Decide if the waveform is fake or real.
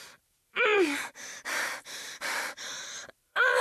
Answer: fake